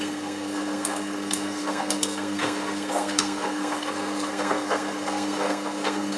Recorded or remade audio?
remade